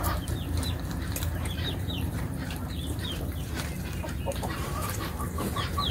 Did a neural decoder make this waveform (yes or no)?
yes